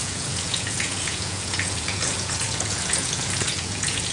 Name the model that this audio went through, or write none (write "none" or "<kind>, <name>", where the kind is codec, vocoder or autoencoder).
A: vocoder, Vocos